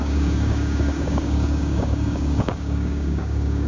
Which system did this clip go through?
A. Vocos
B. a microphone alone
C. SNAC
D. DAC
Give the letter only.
D